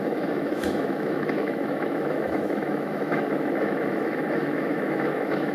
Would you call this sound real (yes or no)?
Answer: no